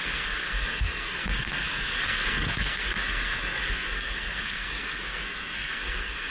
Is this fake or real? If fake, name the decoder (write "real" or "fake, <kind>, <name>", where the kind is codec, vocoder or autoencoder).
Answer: fake, codec, SNAC